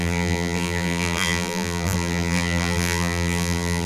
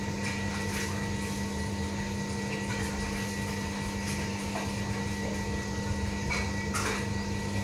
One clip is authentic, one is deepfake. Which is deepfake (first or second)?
first